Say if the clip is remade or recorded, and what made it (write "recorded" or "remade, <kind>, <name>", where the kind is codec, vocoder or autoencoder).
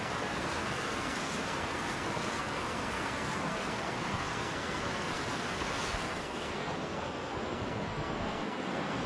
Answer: remade, codec, SNAC